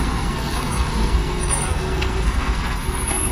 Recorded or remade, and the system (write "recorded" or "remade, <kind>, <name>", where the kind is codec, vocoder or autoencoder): remade, codec, SNAC